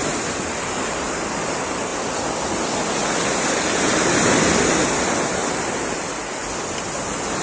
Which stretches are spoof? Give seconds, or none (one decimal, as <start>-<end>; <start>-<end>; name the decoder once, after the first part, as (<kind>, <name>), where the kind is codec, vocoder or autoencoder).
3.0-4.0 (vocoder, BigVGAN v2); 5.4-6.0; 6.4-7.4